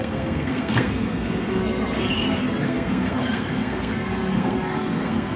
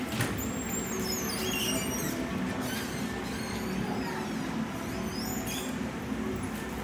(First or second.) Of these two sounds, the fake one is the first